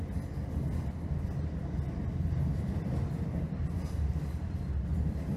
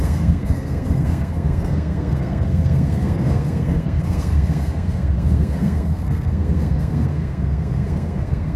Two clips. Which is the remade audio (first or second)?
second